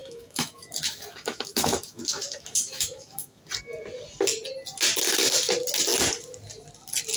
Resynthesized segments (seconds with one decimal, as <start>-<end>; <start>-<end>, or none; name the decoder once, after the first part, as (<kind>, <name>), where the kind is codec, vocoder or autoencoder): 0.0-3.4 (autoencoder, DAC-VAE)